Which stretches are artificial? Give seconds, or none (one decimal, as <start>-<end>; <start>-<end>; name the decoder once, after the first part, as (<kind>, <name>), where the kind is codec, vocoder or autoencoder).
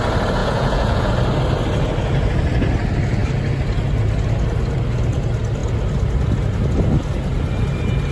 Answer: 0.4-1.1 (vocoder, Vocos)